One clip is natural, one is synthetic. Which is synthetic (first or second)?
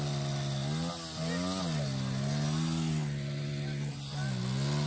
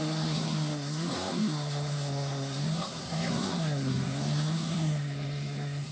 second